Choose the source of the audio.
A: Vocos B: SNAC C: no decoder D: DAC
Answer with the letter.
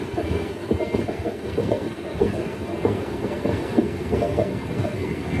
B